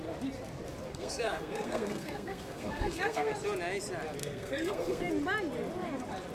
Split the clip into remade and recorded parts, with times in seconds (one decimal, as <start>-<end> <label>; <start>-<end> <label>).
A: 0.0-0.9 recorded; 0.9-3.3 remade; 3.3-4.2 recorded; 4.2-5.1 remade; 5.1-6.3 recorded